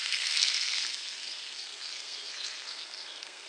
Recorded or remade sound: remade